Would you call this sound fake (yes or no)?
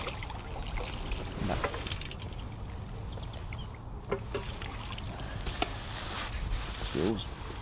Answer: no